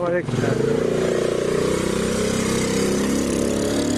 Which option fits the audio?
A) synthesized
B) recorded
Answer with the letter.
B